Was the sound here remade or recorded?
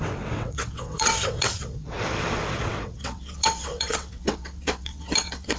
remade